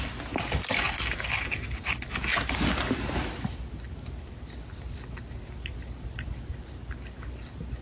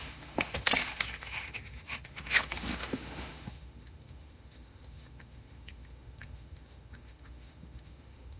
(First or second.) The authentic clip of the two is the first